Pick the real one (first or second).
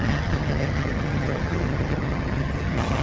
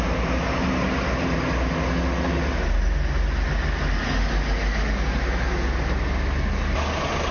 second